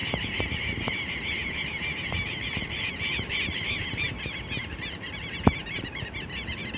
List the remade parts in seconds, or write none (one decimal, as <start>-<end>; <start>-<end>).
0.0-4.1; 4.6-6.1

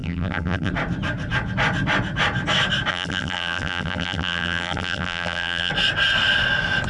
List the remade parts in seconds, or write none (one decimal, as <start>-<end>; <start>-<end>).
0.0-0.7; 2.9-5.7

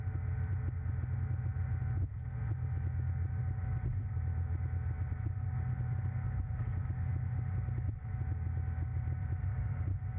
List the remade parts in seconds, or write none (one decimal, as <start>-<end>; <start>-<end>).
8.9-9.6

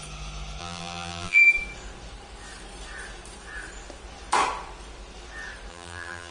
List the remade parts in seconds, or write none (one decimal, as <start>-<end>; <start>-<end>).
0.6-1.4; 5.7-6.3

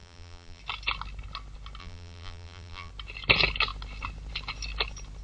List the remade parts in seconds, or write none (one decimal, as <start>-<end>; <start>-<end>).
0.0-0.6; 1.8-2.9

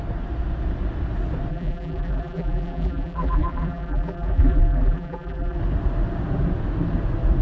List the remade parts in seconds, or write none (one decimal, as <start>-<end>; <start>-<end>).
1.5-5.6

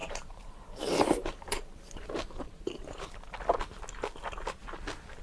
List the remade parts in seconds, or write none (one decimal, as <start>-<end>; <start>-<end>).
0.0-3.1